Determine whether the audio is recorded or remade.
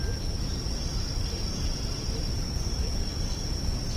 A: recorded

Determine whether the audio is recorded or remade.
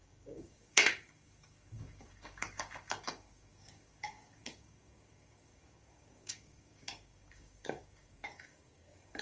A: remade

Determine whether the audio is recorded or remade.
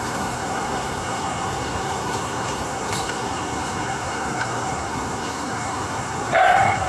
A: remade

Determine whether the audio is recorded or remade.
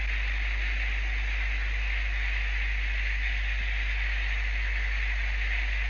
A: recorded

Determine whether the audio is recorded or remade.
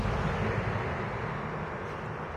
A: recorded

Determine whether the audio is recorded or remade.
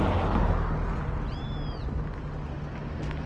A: recorded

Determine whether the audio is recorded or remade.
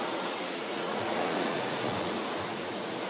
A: remade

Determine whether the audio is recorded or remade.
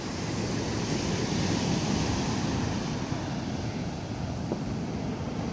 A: recorded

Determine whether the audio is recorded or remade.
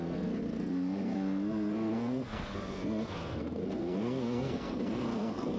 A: remade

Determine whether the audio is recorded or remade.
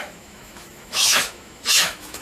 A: remade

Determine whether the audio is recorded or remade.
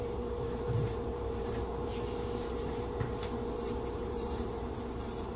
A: remade